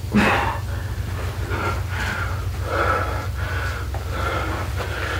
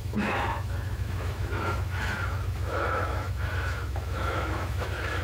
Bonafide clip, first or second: first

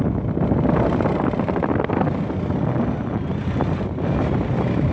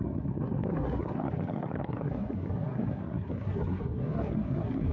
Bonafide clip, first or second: first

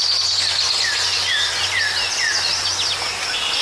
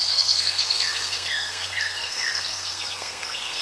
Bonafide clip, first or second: first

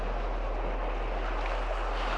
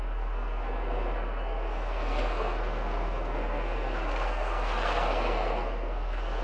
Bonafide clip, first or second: first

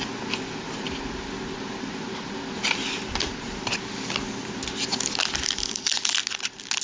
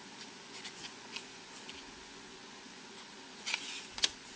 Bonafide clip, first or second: first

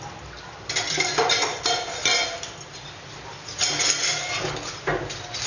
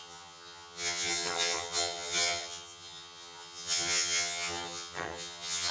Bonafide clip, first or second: first